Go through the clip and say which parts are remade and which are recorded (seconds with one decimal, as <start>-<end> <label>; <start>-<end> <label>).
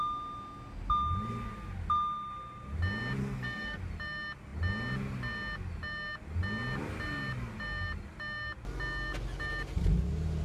0.0-3.2 recorded; 3.2-3.8 remade; 3.8-10.4 recorded